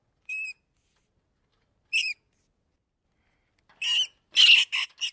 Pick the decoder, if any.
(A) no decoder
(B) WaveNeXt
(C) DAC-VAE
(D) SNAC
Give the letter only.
A